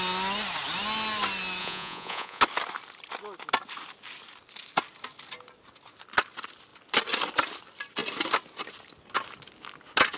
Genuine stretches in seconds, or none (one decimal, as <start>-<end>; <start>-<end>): 0.0-1.6; 2.4-10.2